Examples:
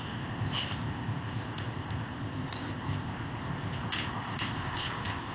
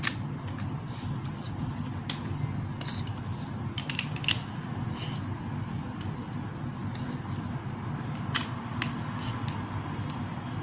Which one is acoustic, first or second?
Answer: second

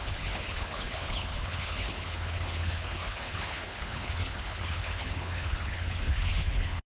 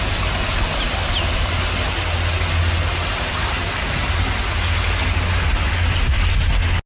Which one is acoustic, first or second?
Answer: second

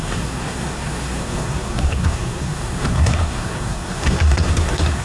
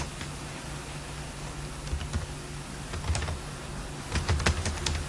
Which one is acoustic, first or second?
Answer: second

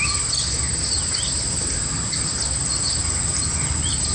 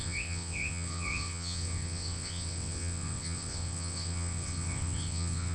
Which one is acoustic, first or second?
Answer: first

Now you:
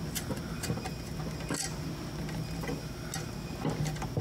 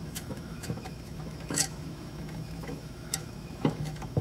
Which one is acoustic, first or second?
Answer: first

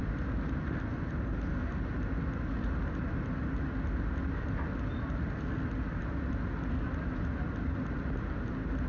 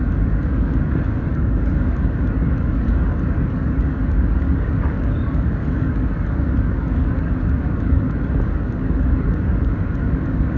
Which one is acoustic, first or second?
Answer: first